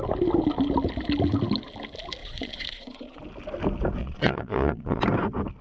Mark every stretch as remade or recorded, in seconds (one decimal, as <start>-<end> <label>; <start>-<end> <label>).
0.0-2.2 recorded; 2.2-3.2 remade; 3.2-4.0 recorded; 4.0-5.0 remade; 5.0-5.6 recorded